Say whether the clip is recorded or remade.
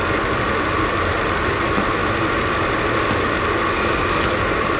recorded